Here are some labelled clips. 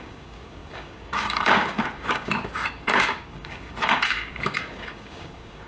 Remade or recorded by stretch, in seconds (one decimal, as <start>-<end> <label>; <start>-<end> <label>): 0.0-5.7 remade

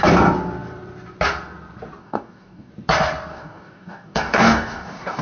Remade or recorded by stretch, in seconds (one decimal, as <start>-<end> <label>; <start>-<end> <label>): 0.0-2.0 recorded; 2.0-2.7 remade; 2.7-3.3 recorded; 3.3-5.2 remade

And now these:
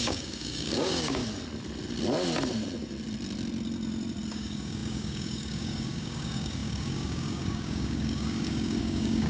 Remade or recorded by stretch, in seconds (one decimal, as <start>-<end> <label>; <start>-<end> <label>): 0.0-1.2 remade; 1.2-4.3 recorded; 4.3-9.3 remade

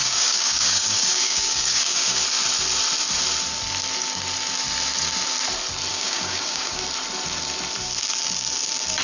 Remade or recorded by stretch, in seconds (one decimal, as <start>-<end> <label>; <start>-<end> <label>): 0.0-2.2 remade; 2.2-5.9 recorded; 5.9-6.8 remade; 6.8-9.0 recorded